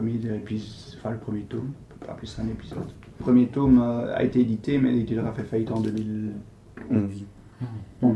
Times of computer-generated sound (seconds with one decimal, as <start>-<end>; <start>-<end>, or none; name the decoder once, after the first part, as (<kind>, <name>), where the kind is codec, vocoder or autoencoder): 6.8-8.2 (codec, SNAC)